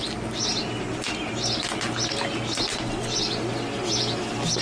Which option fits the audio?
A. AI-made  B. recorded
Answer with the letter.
B